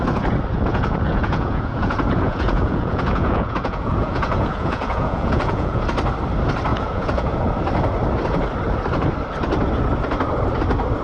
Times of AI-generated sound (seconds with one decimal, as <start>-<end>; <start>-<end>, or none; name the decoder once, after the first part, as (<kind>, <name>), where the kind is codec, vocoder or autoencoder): 0.7-5.8 (vocoder, Vocos); 6.7-7.5